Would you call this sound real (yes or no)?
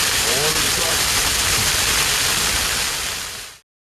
yes